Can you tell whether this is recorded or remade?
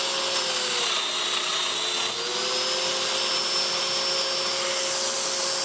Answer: recorded